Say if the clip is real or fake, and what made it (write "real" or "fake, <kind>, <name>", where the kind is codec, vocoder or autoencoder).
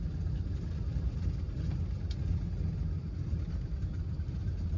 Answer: real